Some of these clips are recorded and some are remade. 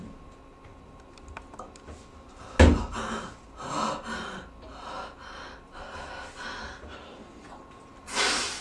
recorded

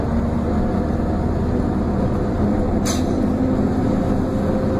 recorded